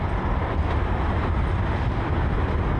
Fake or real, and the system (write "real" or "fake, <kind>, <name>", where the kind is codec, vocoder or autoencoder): real